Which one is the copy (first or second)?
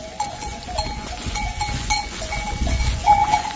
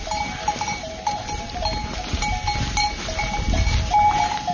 first